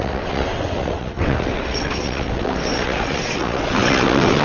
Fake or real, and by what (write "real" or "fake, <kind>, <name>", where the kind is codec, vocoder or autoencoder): fake, vocoder, WaveNeXt